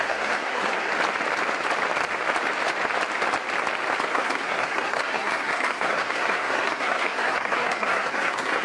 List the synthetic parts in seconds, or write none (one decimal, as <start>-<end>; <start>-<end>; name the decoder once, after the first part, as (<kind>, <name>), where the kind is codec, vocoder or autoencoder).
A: 0.0-0.9 (codec, SNAC); 4.1-8.6